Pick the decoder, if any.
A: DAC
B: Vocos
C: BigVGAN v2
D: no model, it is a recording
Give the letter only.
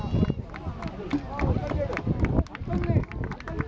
D